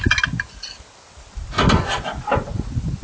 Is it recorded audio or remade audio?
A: recorded